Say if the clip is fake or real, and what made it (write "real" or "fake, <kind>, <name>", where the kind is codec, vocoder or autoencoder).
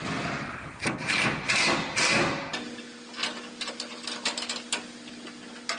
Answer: real